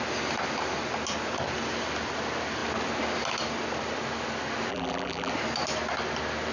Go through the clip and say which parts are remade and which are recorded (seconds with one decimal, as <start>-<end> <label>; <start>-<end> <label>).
0.0-4.7 recorded; 4.7-5.3 remade; 5.3-6.5 recorded